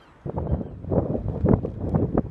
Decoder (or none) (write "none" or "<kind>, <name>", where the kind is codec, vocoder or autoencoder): none